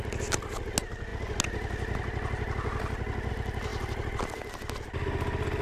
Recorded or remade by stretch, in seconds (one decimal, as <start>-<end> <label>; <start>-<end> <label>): 0.0-5.6 recorded